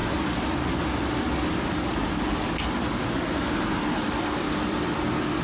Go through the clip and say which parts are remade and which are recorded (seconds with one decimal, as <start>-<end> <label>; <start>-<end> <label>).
0.0-5.4 recorded